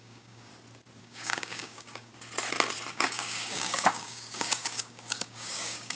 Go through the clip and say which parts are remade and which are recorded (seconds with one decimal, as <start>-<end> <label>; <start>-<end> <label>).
0.0-0.5 remade; 0.5-1.0 recorded; 1.0-2.1 remade; 2.1-2.9 recorded; 2.9-6.0 remade